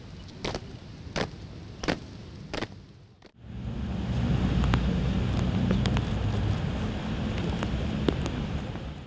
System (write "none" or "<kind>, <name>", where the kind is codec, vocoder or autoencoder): none